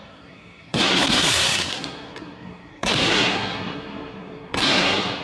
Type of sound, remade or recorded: remade